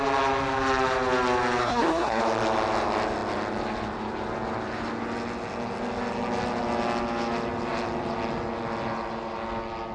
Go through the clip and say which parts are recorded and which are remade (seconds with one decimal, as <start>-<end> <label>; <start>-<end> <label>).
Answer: 0.0-1.6 recorded; 1.6-2.2 remade; 2.2-9.9 recorded